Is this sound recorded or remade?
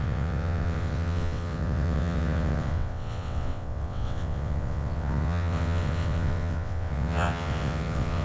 remade